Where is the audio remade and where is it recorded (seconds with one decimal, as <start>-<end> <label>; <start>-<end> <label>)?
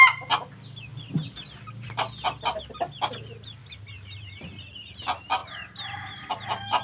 0.0-0.9 recorded; 0.9-2.6 remade; 2.6-3.6 recorded; 3.6-4.6 remade; 4.6-6.8 recorded